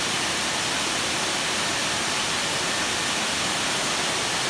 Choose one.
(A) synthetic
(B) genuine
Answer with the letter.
B